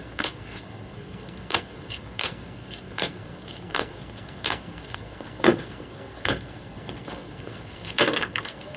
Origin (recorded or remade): remade